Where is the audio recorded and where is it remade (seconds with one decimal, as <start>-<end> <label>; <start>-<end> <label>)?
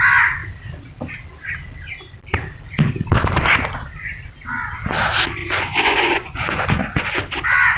0.0-5.4 recorded; 5.4-7.1 remade; 7.1-7.8 recorded